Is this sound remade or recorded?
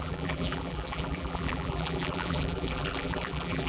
remade